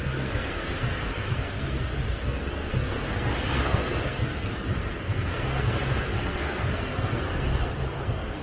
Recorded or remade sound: remade